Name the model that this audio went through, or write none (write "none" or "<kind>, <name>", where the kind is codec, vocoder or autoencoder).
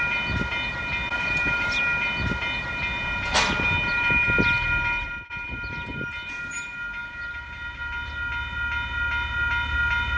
none